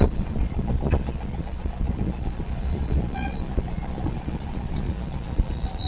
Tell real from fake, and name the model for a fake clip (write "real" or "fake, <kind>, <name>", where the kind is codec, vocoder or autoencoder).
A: fake, vocoder, Vocos